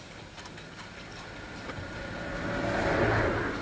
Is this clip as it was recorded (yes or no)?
yes